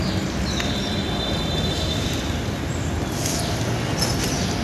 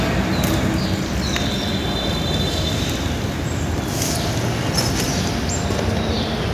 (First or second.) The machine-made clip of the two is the second